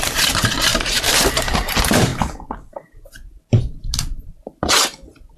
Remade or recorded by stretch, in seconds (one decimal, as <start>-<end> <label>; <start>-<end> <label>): 0.0-5.4 remade